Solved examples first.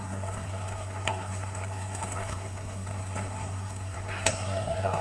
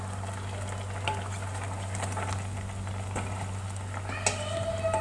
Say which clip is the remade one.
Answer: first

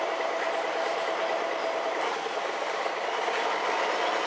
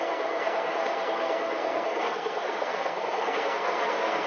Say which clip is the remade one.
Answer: second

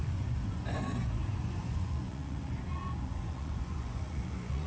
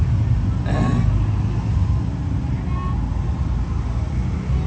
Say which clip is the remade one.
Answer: first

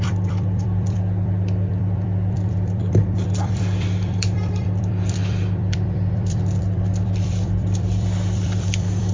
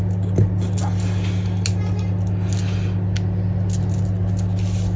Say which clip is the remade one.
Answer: first